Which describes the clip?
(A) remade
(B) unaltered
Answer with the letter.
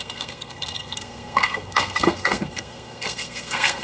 A